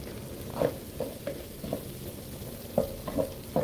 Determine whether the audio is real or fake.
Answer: real